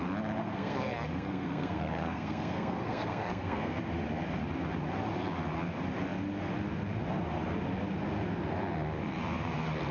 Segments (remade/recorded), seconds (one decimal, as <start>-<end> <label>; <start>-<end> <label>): 0.0-0.4 recorded; 0.4-3.8 remade; 3.8-9.9 recorded